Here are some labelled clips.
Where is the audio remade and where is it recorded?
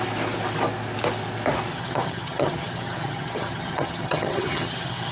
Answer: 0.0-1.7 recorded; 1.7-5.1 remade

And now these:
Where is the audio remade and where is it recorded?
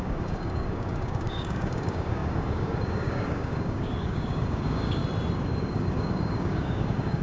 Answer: 0.0-5.0 remade; 5.0-5.6 recorded; 5.6-7.2 remade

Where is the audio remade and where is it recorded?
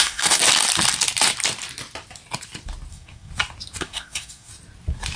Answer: 0.0-0.4 remade; 0.4-2.9 recorded; 2.9-3.3 remade; 3.3-3.8 recorded; 3.8-4.5 remade; 4.5-5.2 recorded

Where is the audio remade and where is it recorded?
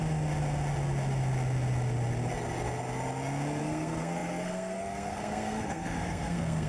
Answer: 0.0-3.6 recorded; 3.6-6.7 remade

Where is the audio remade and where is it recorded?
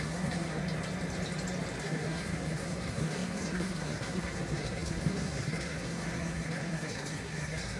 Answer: 0.0-0.6 remade; 0.6-1.8 recorded; 1.8-7.8 remade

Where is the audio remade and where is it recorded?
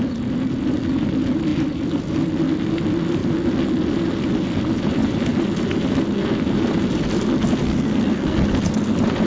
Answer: 0.0-7.6 recorded; 7.6-8.5 remade; 8.5-9.3 recorded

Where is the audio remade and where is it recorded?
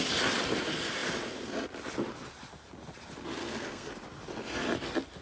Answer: 0.0-3.4 recorded; 3.4-3.9 remade; 3.9-5.2 recorded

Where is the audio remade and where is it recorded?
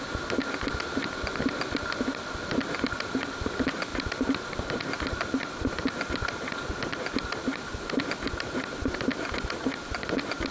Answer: 0.0-10.5 recorded